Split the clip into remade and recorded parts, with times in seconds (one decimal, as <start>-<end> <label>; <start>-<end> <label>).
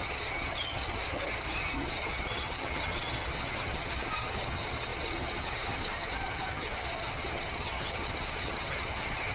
0.0-9.3 remade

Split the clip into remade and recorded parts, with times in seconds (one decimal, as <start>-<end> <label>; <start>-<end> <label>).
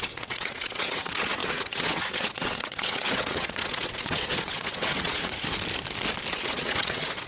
0.0-5.4 remade; 5.4-6.3 recorded; 6.3-7.3 remade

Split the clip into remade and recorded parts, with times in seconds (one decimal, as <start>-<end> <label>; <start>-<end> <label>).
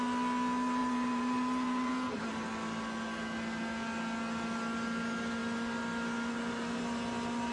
0.0-0.8 recorded; 0.8-1.9 remade; 1.9-7.5 recorded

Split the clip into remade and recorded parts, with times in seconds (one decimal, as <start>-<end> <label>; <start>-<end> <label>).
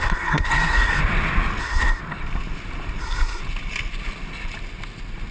0.0-1.0 remade; 1.0-1.6 recorded; 1.6-2.0 remade; 2.0-3.0 recorded; 3.0-3.4 remade; 3.4-5.3 recorded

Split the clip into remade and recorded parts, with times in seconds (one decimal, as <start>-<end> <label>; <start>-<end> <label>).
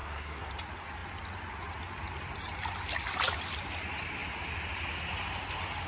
0.0-0.5 remade; 0.5-5.9 recorded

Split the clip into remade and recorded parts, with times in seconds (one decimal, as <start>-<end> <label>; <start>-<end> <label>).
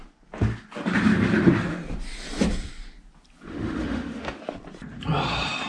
0.0-3.5 recorded; 3.5-4.4 remade; 4.4-5.7 recorded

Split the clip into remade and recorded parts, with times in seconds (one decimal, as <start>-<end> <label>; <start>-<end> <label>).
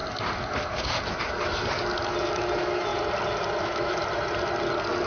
0.0-2.3 recorded; 2.3-2.9 remade; 2.9-3.6 recorded; 3.6-4.0 remade; 4.0-5.1 recorded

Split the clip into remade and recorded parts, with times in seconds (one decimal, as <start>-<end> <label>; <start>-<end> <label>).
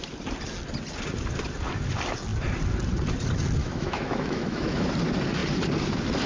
0.0-3.6 recorded; 3.6-4.9 remade; 4.9-6.3 recorded